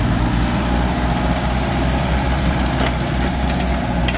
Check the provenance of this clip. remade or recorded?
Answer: recorded